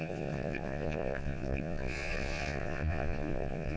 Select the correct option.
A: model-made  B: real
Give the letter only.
A